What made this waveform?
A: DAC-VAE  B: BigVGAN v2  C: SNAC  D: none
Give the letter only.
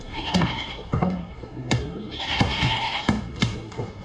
C